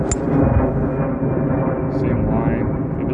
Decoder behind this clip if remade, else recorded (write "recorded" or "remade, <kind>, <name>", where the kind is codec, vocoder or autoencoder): recorded